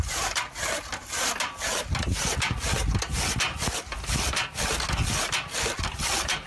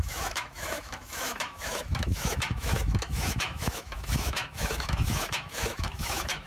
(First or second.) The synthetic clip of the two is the second